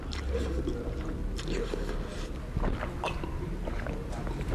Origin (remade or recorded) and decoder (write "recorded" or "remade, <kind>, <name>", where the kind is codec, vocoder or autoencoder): recorded